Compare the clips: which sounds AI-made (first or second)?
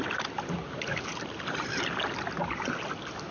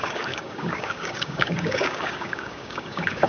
second